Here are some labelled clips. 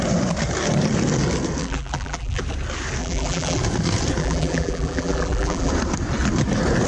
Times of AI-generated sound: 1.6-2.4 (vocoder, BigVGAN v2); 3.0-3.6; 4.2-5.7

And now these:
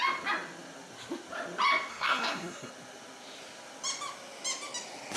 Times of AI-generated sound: 1.9-2.7 (codec, SNAC)